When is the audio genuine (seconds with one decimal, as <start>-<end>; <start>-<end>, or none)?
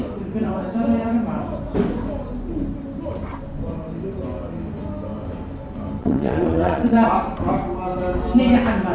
0.0-6.0; 7.1-8.9